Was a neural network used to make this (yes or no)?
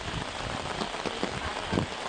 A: no